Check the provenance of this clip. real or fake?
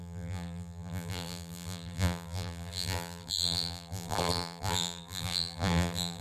fake